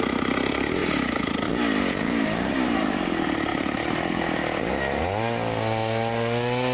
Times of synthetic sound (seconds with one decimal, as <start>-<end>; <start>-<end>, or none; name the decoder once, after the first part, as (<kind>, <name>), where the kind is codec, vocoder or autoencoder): 0.8-1.5 (vocoder, BigVGAN v2); 3.5-4.6